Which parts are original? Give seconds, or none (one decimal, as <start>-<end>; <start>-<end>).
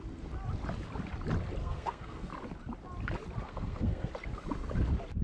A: 0.0-1.6; 2.3-3.4; 4.1-5.2